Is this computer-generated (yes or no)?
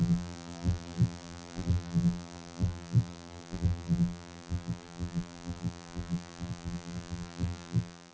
yes